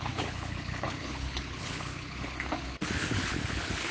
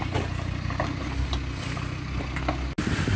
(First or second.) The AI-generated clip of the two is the first